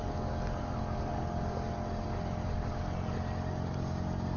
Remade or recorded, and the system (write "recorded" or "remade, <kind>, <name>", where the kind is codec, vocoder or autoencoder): recorded